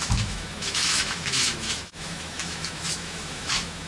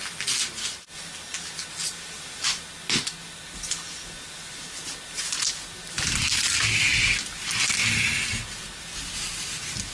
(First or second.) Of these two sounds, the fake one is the first